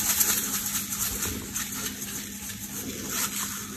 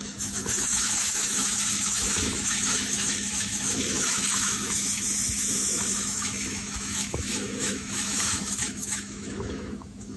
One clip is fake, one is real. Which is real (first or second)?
first